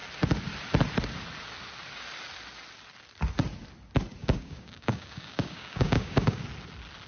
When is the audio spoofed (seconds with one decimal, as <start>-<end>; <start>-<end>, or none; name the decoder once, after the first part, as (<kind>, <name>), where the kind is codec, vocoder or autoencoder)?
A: 4.2-6.4 (codec, DAC)